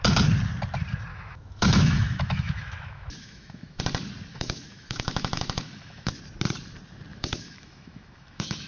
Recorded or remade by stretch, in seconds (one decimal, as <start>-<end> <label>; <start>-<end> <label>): 0.0-1.1 recorded; 1.1-3.8 remade; 3.8-4.3 recorded; 4.3-6.1 remade; 6.1-7.1 recorded; 7.1-8.7 remade